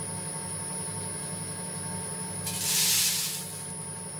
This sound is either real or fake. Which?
real